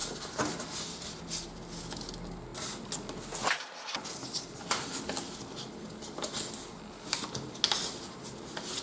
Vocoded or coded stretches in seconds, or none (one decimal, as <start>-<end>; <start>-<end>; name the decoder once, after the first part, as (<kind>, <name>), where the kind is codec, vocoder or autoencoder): none